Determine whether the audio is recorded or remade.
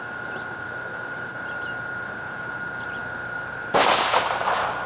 remade